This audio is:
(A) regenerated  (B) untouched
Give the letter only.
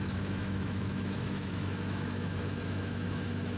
A